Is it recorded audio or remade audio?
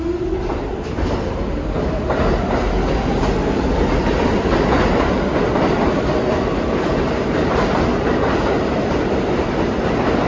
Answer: recorded